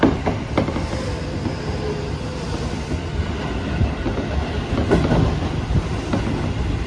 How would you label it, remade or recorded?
recorded